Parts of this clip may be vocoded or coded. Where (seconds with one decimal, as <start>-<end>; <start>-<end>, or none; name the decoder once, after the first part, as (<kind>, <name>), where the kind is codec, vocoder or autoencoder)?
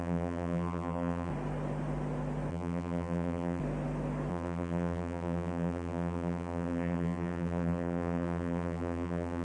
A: 0.0-1.3 (vocoder, BigVGAN v2); 2.5-3.6; 4.3-9.4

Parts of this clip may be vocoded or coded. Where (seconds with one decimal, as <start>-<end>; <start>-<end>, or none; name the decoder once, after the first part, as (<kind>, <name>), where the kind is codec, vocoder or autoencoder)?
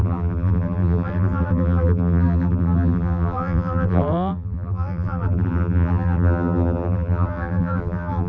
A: 0.0-8.3 (vocoder, BigVGAN v2)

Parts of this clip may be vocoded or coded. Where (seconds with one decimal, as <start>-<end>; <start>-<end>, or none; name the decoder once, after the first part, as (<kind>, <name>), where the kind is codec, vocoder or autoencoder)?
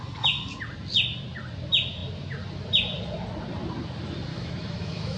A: 4.3-5.2 (autoencoder, DAC-VAE)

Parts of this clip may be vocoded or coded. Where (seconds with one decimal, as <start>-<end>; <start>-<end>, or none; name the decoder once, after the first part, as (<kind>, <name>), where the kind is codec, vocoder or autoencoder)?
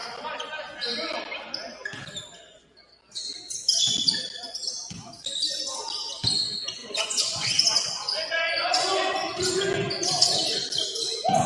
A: 6.8-9.6 (vocoder, Vocos)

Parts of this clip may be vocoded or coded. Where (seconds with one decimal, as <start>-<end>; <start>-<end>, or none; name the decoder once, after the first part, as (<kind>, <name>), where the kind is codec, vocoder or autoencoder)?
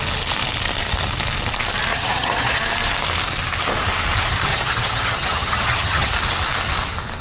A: 1.9-2.6 (vocoder, HiFi-GAN); 4.5-6.1